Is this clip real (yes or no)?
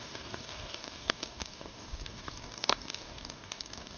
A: no